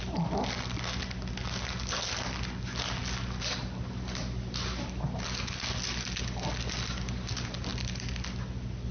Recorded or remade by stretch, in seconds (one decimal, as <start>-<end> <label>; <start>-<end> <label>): 0.0-8.9 recorded